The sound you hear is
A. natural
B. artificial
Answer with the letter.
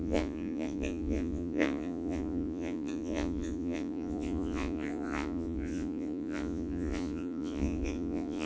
B